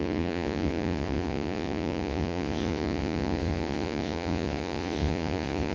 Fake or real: fake